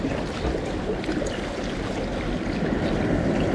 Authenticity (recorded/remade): recorded